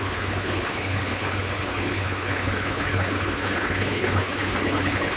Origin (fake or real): fake